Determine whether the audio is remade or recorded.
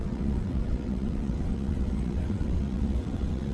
remade